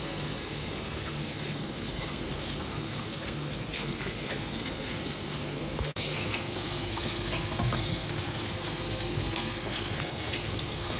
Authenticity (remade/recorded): remade